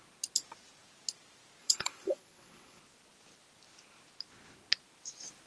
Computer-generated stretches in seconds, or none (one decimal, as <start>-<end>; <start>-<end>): 1.6-2.8